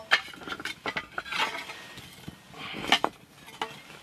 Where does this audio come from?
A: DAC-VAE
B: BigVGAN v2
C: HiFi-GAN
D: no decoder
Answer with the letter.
D